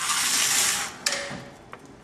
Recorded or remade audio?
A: recorded